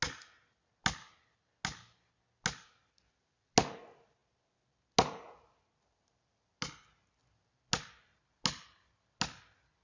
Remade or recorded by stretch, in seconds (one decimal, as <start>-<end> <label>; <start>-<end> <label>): 0.0-9.8 recorded